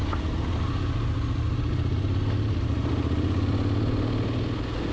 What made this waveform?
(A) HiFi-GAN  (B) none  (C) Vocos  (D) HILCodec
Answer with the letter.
B